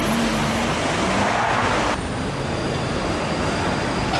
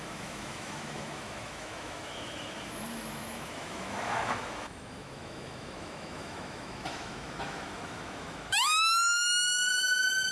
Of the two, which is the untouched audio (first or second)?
first